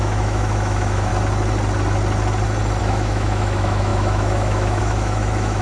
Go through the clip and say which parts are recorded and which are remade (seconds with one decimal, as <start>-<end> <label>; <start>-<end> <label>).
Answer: 0.0-1.1 remade; 1.1-2.8 recorded; 2.8-5.6 remade